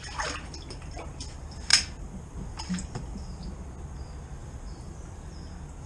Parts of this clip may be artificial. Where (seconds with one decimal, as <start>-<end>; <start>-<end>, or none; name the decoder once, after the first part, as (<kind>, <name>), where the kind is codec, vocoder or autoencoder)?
1.7-3.4 (vocoder, BigVGAN v2); 4.4-5.3